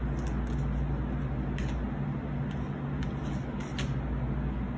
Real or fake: real